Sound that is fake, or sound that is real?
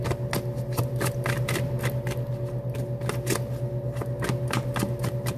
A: real